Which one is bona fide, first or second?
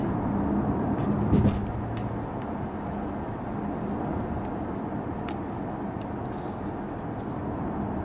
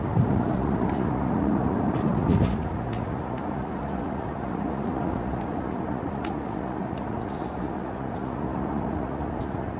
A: first